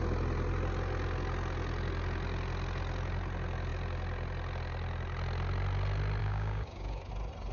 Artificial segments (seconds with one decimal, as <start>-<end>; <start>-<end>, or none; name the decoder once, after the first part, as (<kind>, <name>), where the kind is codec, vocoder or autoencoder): 6.2-7.1 (codec, DAC)